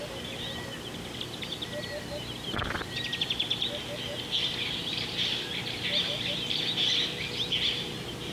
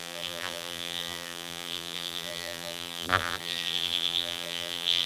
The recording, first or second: first